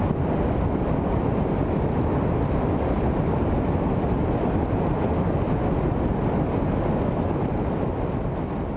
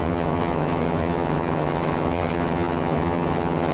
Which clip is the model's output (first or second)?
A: second